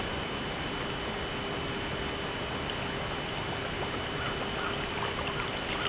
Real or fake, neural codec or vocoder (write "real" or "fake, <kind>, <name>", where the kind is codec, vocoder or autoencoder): real